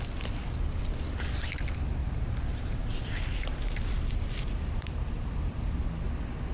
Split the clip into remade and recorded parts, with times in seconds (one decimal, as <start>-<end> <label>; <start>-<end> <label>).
0.0-2.0 recorded; 2.0-5.9 remade; 5.9-6.5 recorded